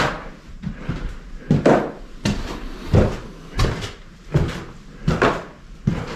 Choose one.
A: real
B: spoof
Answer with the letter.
A